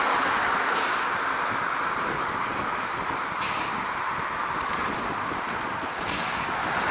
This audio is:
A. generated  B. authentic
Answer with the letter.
B